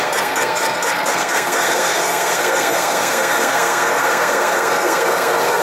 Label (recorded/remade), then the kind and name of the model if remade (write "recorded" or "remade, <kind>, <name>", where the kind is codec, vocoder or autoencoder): remade, codec, SNAC